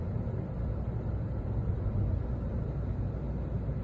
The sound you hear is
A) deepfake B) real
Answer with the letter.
B